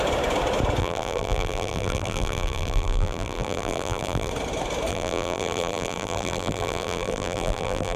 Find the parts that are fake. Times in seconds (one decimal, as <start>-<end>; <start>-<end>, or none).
0.8-4.3; 4.9-8.0